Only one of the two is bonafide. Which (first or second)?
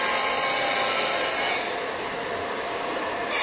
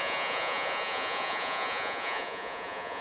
first